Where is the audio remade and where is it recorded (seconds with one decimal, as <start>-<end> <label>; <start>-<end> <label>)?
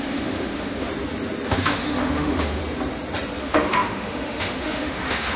0.0-0.9 remade; 0.9-1.5 recorded; 1.5-2.6 remade; 2.6-3.4 recorded; 3.4-5.4 remade